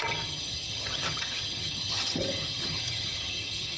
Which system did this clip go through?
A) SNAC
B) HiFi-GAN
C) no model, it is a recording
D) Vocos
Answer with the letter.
B